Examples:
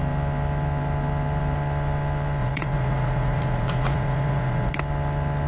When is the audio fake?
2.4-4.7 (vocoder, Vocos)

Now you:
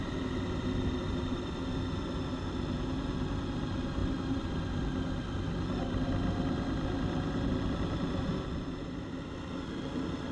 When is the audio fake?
none

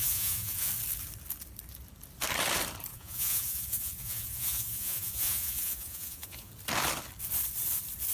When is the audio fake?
0.0-0.7 (vocoder, Vocos); 2.9-6.5

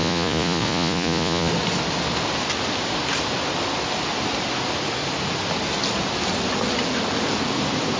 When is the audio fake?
0.0-1.5 (vocoder, Vocos)

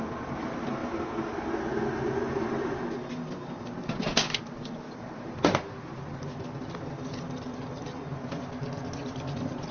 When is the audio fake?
none

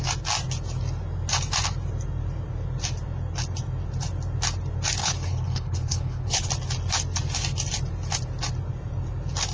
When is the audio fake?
5.0-6.5 (codec, HILCodec)

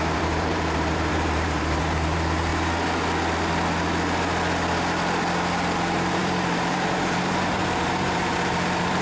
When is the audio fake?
0.0-2.5 (vocoder, BigVGAN v2); 5.7-9.0

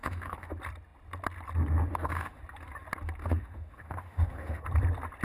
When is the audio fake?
0.0-0.5 (autoencoder, DAC-VAE); 1.9-2.4; 3.2-4.6